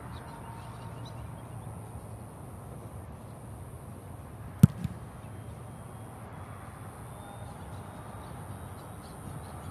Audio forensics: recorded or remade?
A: recorded